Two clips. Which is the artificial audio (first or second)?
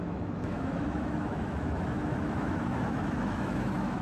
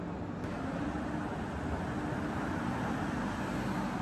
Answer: first